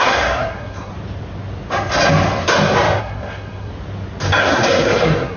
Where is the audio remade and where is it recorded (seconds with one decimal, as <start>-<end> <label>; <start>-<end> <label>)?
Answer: 0.0-0.9 remade; 0.9-3.0 recorded; 3.0-3.7 remade; 3.7-4.4 recorded; 4.4-5.4 remade